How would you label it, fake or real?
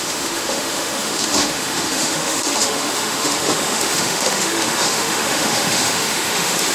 fake